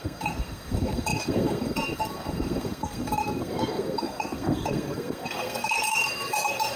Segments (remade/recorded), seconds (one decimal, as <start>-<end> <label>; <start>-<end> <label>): 0.0-6.8 remade